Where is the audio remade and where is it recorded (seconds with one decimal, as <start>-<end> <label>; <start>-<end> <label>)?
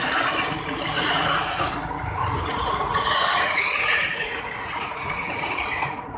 0.0-1.0 recorded; 1.0-1.7 remade; 1.7-2.5 recorded; 2.5-6.2 remade